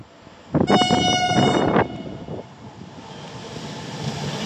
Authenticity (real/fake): real